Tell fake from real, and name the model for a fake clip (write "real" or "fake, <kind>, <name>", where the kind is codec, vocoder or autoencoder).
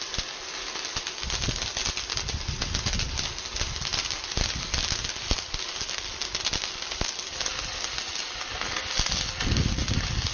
real